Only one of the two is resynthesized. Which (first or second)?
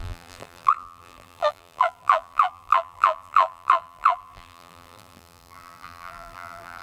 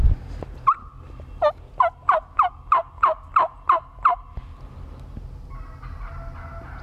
first